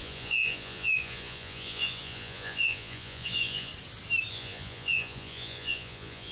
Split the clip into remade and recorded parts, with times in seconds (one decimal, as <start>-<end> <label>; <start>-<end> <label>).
0.0-3.7 remade; 3.7-4.3 recorded; 4.3-6.3 remade